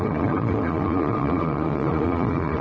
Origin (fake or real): fake